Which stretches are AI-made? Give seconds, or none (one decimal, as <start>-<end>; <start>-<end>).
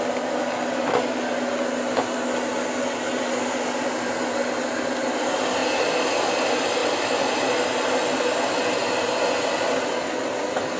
none